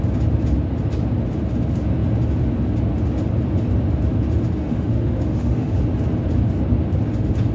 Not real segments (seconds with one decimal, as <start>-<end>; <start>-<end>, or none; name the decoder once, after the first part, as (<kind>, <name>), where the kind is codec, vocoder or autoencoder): 4.6-5.8 (autoencoder, DAC-VAE)

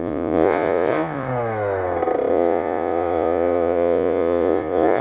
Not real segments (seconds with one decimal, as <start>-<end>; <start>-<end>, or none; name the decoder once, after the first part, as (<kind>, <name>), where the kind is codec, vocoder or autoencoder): 0.0-1.3 (vocoder, Vocos); 2.3-5.0

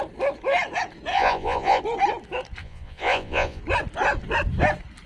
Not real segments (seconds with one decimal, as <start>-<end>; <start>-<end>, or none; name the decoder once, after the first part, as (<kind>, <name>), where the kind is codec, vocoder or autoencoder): 1.1-1.8 (vocoder, Vocos); 2.6-3.6

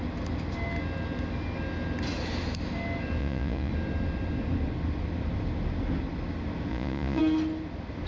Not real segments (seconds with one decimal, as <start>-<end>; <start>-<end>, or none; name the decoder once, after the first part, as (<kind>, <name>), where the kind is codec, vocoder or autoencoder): 3.2-3.7 (vocoder, Vocos); 6.7-7.2

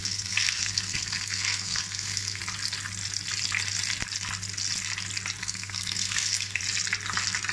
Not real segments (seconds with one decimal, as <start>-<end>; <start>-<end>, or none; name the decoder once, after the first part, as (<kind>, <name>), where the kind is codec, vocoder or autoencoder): 0.0-2.4 (codec, SNAC); 5.4-6.6

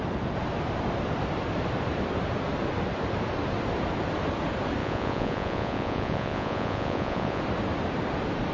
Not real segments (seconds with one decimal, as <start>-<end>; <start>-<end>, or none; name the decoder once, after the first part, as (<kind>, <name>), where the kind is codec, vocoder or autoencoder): 4.8-7.4 (vocoder, Vocos)

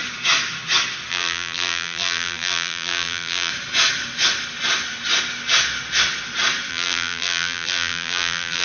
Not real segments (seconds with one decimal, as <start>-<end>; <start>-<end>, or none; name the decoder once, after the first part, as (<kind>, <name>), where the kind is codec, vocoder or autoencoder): 1.1-3.5 (vocoder, BigVGAN v2); 6.7-8.6